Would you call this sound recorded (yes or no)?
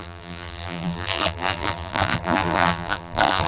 no